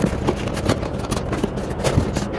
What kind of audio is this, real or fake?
real